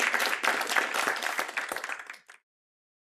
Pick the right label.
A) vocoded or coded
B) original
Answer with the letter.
B